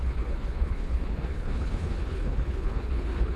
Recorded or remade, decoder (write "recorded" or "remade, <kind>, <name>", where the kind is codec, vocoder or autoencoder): remade, codec, HILCodec